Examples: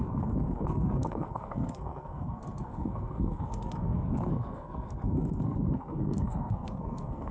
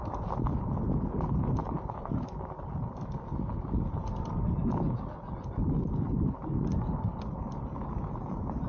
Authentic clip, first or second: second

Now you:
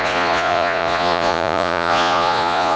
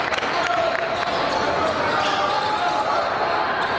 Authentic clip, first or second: second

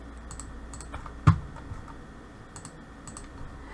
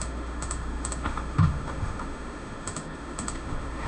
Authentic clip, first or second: first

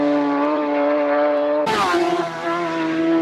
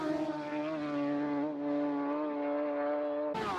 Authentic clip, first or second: second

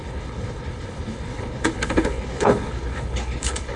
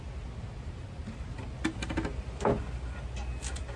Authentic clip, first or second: second